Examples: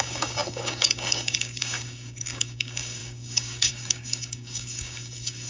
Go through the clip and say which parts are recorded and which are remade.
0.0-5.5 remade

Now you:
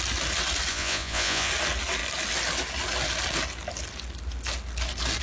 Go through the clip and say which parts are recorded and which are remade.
0.0-0.7 recorded; 0.7-1.5 remade; 1.5-5.2 recorded

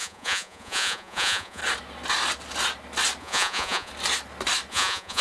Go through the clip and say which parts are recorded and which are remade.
0.0-1.6 remade; 1.6-3.2 recorded; 3.2-3.9 remade; 3.9-4.7 recorded; 4.7-5.2 remade

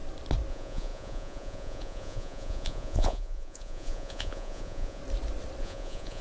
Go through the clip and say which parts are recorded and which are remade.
0.0-0.5 recorded; 0.5-5.0 remade; 5.0-5.6 recorded; 5.6-6.2 remade

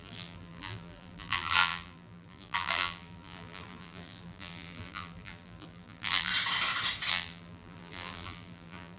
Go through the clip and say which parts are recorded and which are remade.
0.0-6.3 remade; 6.3-7.1 recorded; 7.1-9.0 remade

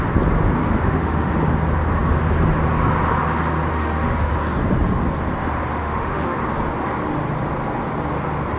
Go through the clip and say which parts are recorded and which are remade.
0.0-0.6 recorded; 0.6-1.3 remade; 1.3-3.7 recorded; 3.7-4.3 remade; 4.3-5.8 recorded; 5.8-6.4 remade; 6.4-8.6 recorded

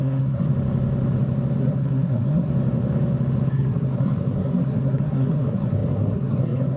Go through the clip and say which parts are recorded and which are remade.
0.0-0.5 remade; 0.5-1.6 recorded; 1.6-2.5 remade; 2.5-3.5 recorded; 3.5-6.8 remade